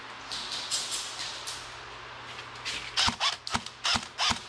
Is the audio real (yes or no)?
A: yes